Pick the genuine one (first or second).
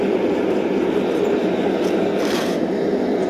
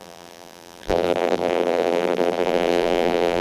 first